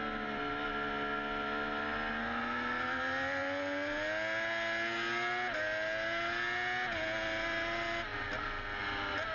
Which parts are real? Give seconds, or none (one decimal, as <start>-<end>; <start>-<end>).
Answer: 0.0-9.3